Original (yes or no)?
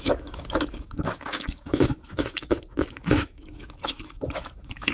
no